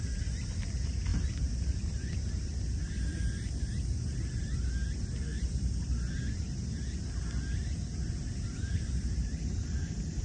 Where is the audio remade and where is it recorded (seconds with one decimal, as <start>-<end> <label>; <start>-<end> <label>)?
0.0-1.1 recorded; 1.1-3.1 remade; 3.1-5.3 recorded; 5.3-6.5 remade; 6.5-7.6 recorded; 7.6-10.2 remade